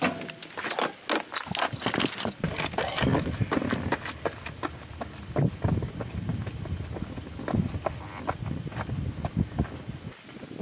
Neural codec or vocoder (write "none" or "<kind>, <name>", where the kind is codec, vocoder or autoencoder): none